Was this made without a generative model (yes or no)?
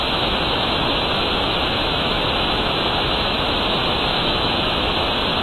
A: no